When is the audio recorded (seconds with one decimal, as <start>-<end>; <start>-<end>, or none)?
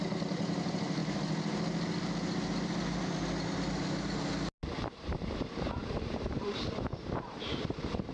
1.0-4.8